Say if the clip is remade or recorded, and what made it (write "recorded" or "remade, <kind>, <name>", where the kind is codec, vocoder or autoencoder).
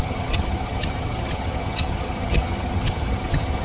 remade, vocoder, HiFi-GAN